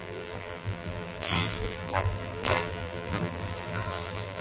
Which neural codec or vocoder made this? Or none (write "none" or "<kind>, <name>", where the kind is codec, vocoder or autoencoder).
vocoder, BigVGAN v2